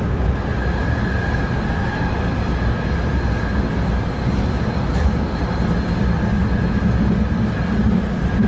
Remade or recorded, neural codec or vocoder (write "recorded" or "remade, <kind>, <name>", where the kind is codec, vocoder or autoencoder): recorded